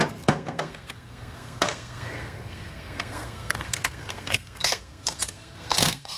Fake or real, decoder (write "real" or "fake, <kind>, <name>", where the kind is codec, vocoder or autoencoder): fake, codec, SNAC